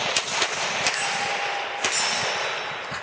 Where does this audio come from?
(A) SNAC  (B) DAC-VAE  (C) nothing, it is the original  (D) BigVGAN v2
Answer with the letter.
C